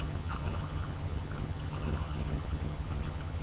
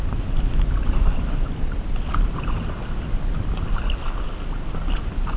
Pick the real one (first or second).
second